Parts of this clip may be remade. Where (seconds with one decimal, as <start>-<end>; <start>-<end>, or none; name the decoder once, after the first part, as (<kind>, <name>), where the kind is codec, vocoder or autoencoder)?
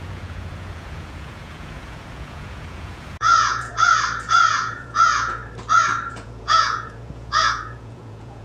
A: 0.0-3.7 (vocoder, Vocos); 4.5-5.4; 6.1-8.4